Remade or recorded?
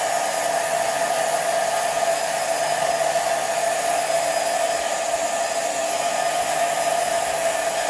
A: recorded